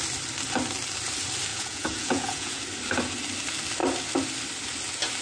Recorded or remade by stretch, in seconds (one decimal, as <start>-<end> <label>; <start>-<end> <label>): 0.0-1.5 recorded; 1.5-2.6 remade; 2.6-5.2 recorded